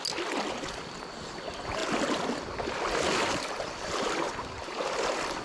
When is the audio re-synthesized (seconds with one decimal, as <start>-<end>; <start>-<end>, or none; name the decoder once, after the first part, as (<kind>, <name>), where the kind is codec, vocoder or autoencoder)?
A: none

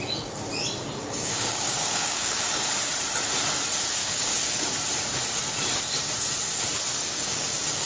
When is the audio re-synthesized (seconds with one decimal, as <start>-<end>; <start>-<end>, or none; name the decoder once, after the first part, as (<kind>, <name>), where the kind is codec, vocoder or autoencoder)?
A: 1.0-2.7 (codec, DAC); 4.0-4.6; 7.0-7.9

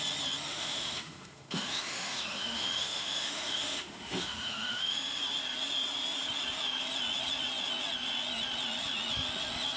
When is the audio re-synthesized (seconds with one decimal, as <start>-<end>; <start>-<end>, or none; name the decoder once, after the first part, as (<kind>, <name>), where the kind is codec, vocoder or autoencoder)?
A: 0.5-5.2 (autoencoder, DAC-VAE)